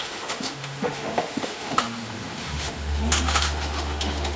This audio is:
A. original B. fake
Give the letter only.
B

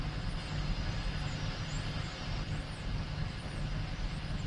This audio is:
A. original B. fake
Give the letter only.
A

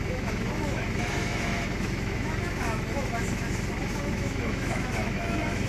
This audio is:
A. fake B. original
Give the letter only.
A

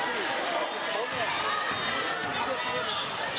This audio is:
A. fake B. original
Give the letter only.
B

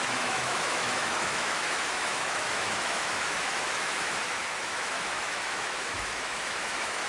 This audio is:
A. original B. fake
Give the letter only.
B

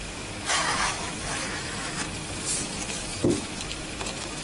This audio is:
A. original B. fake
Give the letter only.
B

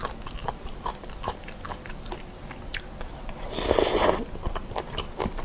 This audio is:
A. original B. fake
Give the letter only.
A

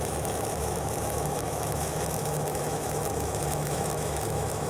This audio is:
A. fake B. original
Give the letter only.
A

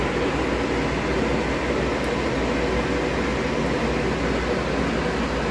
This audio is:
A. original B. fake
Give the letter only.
A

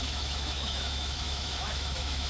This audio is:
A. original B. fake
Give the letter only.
B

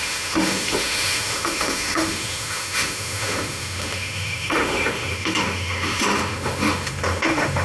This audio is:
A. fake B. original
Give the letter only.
A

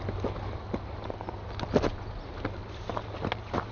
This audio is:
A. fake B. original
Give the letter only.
B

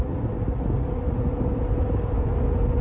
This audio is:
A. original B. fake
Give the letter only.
A